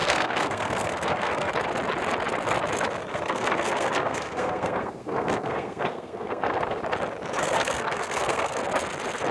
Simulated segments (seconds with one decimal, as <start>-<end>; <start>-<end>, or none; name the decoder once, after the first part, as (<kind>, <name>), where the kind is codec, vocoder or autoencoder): 0.0-1.5 (codec, SNAC); 3.1-6.8; 7.4-8.6